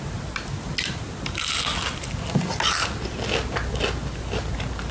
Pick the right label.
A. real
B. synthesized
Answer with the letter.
A